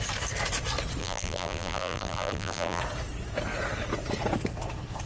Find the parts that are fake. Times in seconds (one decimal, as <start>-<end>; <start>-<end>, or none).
1.0-2.8